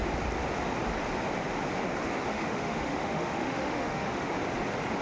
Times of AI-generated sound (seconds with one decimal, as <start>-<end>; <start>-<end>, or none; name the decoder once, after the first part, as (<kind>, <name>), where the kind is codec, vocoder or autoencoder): 2.3-4.3 (autoencoder, DAC-VAE)